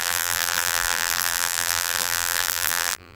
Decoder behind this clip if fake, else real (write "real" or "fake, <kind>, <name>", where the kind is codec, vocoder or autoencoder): fake, vocoder, BigVGAN v2